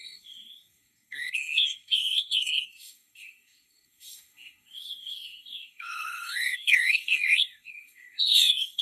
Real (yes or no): no